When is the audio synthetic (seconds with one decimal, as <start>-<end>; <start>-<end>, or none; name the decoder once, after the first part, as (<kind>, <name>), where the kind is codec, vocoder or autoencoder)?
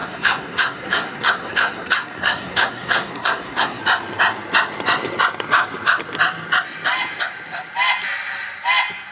0.0-3.8 (codec, SNAC)